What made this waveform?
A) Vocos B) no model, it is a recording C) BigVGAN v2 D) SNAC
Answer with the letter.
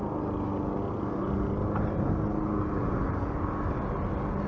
B